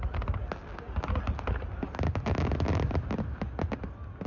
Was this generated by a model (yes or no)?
no